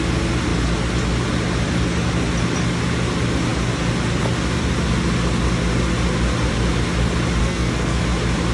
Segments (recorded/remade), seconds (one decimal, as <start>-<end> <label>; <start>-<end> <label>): 0.0-7.4 recorded; 7.4-8.0 remade; 8.0-8.5 recorded